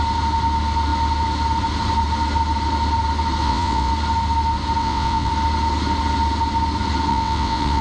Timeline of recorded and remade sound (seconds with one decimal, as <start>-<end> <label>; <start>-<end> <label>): 0.0-3.4 recorded; 3.4-3.9 remade; 3.9-4.8 recorded; 4.8-5.3 remade; 5.3-7.1 recorded; 7.1-7.8 remade